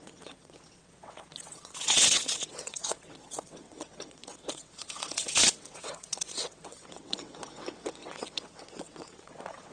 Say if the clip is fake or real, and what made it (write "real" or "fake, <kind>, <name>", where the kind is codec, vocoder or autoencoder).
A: fake, vocoder, WaveNeXt